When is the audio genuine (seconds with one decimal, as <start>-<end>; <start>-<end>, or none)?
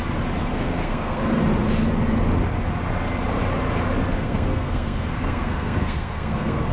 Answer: 0.0-0.4; 1.2-4.1